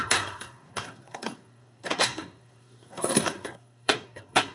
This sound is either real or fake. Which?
fake